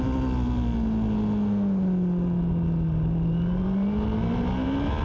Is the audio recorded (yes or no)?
yes